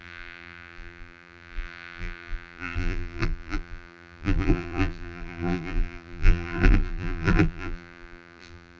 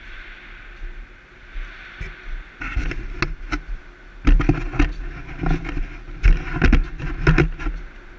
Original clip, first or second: second